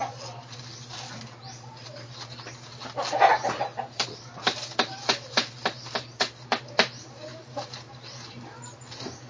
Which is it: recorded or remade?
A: recorded